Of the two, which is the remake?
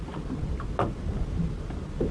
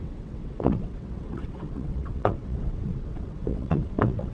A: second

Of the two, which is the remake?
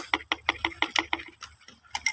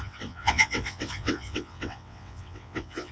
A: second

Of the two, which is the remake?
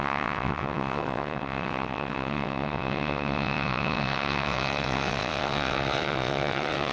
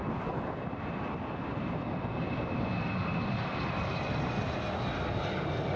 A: first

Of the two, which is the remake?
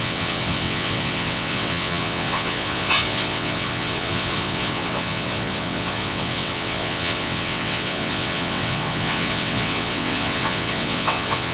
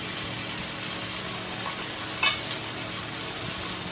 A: first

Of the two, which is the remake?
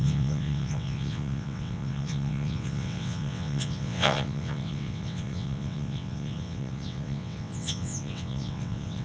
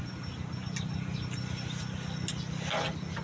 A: first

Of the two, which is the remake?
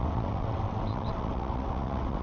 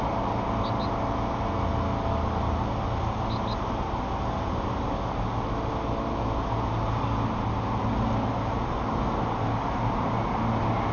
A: first